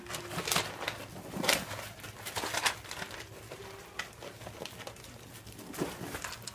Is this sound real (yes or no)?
yes